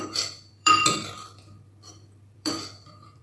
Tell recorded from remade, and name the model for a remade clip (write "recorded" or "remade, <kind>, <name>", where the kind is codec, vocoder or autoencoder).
remade, vocoder, BigVGAN v2